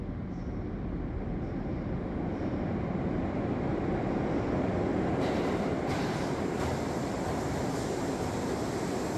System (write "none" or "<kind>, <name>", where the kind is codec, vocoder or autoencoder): none